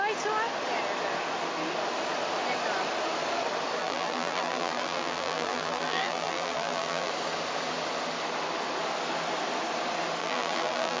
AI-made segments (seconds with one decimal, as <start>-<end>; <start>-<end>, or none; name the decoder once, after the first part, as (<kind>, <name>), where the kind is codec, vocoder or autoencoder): 3.8-7.1 (vocoder, BigVGAN v2); 10.2-11.0